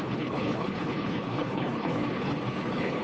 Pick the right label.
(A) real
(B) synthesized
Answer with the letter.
B